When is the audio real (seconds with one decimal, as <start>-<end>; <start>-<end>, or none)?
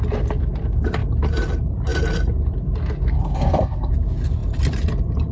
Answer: 0.0-3.1; 3.9-5.3